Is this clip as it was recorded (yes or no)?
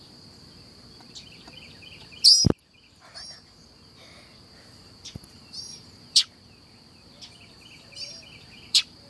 no